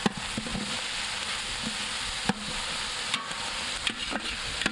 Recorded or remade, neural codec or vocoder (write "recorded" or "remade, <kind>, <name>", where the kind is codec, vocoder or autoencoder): recorded